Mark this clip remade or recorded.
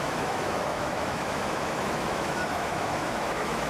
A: remade